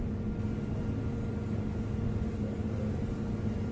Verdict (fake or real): real